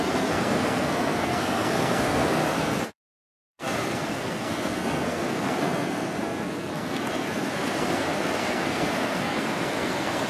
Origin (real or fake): fake